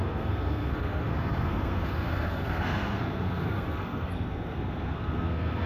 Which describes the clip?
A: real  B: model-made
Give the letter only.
B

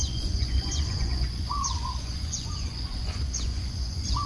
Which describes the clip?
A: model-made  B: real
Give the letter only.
A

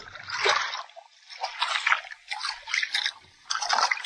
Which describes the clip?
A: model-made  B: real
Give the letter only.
B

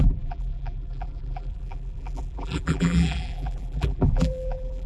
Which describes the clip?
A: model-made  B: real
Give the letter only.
A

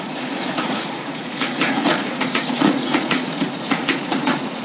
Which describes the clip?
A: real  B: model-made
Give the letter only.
B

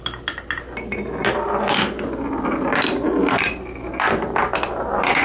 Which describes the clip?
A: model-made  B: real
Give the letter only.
B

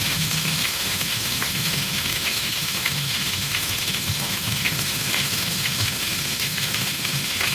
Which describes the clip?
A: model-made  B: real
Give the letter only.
A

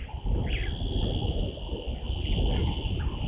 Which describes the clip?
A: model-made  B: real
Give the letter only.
B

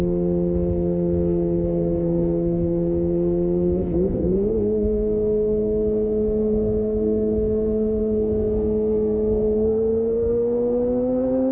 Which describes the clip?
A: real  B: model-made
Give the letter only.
B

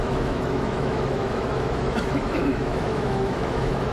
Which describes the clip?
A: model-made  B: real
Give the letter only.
A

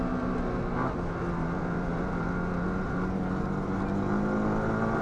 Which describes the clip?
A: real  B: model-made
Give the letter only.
A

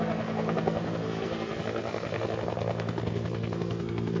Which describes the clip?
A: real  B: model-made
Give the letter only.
B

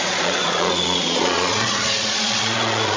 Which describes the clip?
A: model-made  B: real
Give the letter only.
A